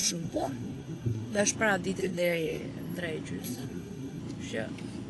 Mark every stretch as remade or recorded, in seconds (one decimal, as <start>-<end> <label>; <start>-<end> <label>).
0.0-1.4 remade; 1.4-2.0 recorded; 2.0-2.6 remade; 2.6-3.4 recorded; 3.4-4.2 remade; 4.2-5.1 recorded